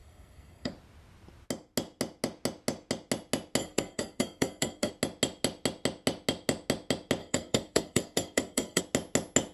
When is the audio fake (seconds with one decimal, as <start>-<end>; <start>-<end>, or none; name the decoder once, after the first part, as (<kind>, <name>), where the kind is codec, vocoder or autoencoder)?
0.0-0.7 (codec, SNAC); 3.6-4.9; 7.2-8.8